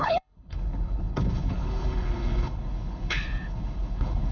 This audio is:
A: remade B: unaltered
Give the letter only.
A